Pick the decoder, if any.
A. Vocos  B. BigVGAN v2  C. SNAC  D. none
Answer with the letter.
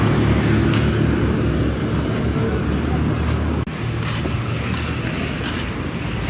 D